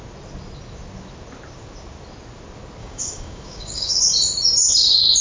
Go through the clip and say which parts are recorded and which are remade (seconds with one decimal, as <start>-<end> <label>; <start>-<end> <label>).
0.0-2.8 recorded; 2.8-3.9 remade; 3.9-5.2 recorded